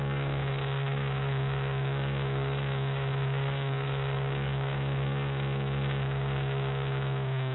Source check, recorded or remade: remade